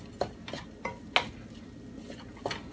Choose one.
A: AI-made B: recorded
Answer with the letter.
B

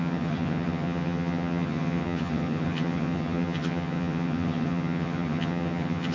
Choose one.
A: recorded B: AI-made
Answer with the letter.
B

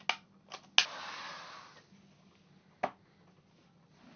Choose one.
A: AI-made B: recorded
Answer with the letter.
B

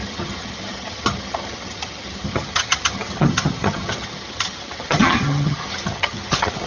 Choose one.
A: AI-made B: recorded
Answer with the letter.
A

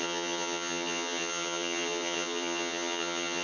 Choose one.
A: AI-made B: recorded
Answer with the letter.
A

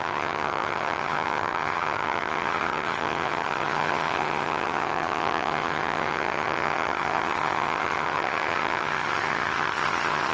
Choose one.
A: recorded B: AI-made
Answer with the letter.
B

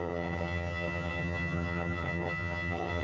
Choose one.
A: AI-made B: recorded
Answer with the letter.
A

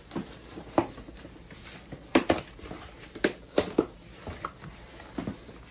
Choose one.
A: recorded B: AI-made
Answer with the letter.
A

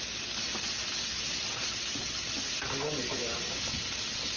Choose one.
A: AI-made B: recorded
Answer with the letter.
B